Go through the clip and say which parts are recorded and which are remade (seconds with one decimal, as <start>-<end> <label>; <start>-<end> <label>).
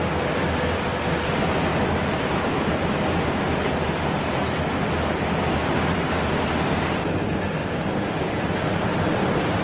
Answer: 0.0-1.7 recorded; 1.7-4.3 remade; 4.3-5.6 recorded; 5.6-6.1 remade; 6.1-9.6 recorded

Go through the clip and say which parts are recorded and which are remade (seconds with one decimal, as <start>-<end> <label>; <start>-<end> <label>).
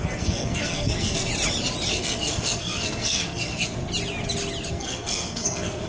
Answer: 0.0-1.3 remade; 1.3-1.9 recorded; 1.9-3.8 remade; 3.8-4.7 recorded; 4.7-5.9 remade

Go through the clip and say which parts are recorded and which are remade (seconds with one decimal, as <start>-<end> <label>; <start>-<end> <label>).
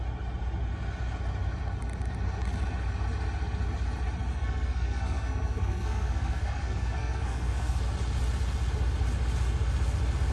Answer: 0.0-4.3 recorded; 4.3-7.8 remade; 7.8-10.3 recorded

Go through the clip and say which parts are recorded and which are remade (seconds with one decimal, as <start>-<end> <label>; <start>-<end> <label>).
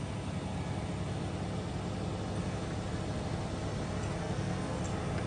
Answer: 0.0-4.2 recorded; 4.2-4.8 remade; 4.8-5.3 recorded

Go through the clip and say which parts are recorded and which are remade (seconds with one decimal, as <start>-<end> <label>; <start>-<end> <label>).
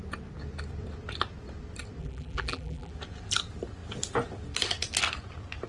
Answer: 0.0-2.0 recorded; 2.0-2.9 remade; 2.9-5.7 recorded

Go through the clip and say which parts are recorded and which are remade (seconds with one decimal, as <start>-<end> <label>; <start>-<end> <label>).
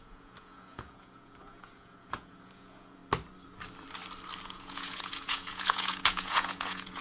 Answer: 0.0-3.0 remade; 3.0-4.4 recorded; 4.4-7.0 remade